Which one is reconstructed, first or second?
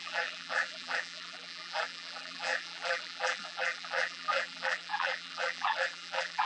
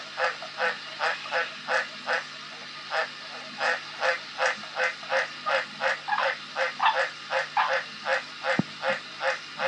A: first